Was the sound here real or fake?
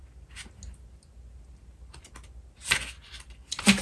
real